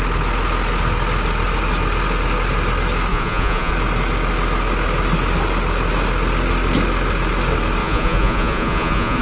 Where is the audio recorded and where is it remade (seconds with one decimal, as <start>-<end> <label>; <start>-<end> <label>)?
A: 0.0-3.1 recorded; 3.1-3.7 remade; 3.7-7.8 recorded; 7.8-9.2 remade